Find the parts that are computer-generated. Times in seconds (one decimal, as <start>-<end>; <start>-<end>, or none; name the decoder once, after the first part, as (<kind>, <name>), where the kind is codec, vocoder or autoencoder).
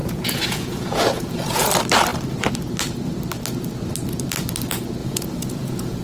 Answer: 0.0-1.7 (vocoder, Vocos); 5.0-6.0